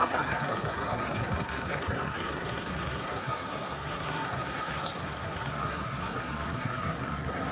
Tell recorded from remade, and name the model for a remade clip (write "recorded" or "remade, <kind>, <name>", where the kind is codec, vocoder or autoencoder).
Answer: remade, codec, SNAC